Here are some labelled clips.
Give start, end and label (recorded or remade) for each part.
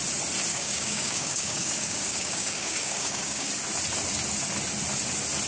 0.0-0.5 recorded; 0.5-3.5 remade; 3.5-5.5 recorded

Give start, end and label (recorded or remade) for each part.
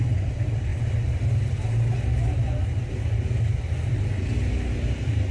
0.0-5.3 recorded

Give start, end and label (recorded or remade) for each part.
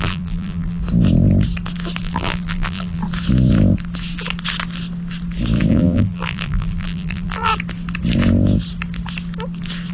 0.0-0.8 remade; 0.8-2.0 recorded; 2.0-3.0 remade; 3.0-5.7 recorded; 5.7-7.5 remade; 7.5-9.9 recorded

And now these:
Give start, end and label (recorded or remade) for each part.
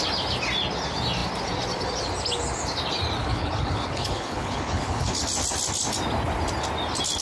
0.0-3.2 recorded; 3.2-5.2 remade; 5.2-7.2 recorded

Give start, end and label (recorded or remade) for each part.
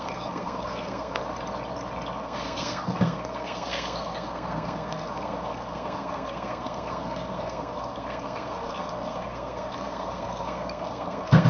0.0-1.2 remade; 1.2-2.2 recorded; 2.2-11.5 remade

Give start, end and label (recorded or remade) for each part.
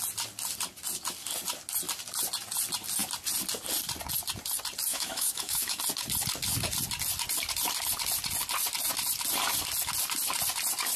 0.0-4.9 recorded; 4.9-5.8 remade; 5.8-11.0 recorded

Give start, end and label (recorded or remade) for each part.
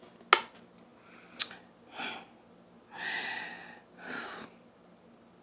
0.0-5.4 recorded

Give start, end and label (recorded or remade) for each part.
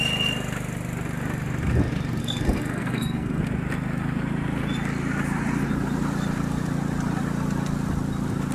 0.0-2.2 recorded; 2.2-3.4 remade; 3.4-8.5 recorded